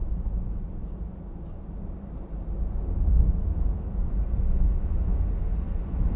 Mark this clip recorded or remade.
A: recorded